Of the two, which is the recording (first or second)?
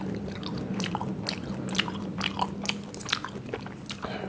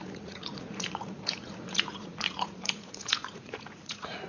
first